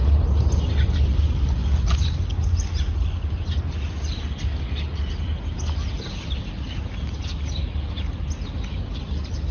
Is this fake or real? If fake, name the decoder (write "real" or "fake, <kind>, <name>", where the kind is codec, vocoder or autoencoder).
real